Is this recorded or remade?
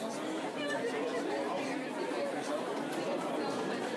recorded